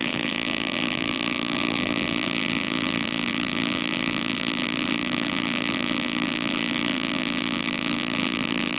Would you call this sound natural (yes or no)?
no